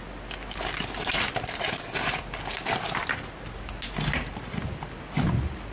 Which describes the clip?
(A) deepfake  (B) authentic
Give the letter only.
B